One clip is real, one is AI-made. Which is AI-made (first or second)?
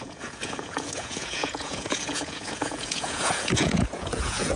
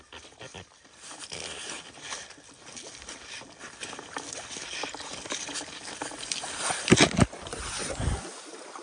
first